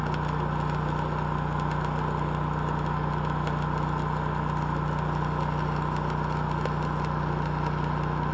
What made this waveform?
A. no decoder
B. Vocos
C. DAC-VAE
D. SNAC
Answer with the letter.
A